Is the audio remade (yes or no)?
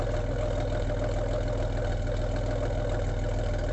no